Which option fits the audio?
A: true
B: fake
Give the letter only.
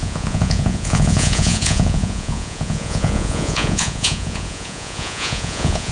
B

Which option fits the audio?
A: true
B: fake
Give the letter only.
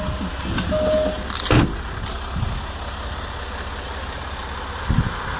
A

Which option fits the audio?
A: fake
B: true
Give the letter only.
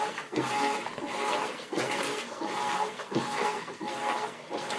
A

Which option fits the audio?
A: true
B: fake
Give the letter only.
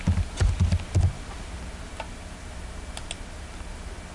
A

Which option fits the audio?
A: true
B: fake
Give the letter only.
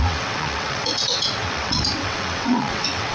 B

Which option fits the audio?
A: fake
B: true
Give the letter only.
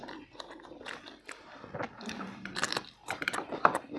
B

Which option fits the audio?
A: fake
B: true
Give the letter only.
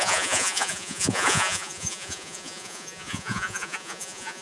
A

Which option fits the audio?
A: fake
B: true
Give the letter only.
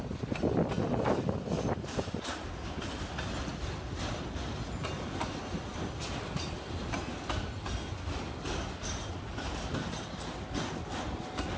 B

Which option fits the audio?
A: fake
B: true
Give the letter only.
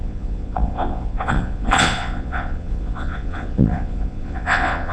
A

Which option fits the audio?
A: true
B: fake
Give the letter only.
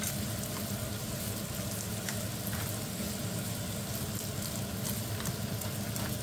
A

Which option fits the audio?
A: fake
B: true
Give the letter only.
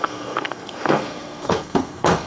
A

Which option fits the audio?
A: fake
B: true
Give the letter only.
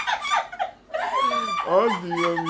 B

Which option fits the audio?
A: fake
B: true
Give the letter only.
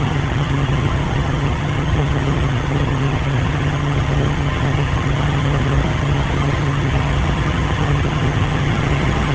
A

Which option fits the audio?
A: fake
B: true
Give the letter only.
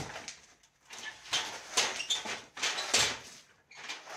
B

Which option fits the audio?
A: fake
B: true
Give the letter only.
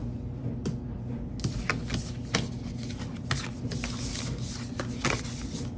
B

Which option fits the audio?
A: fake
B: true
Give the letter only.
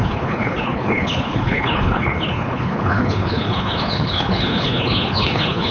A